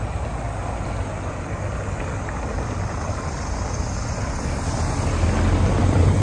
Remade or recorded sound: recorded